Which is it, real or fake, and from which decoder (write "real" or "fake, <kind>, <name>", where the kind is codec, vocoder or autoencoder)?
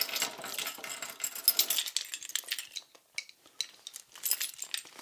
real